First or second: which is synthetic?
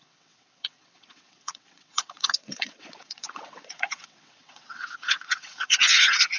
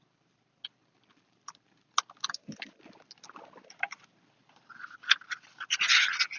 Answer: first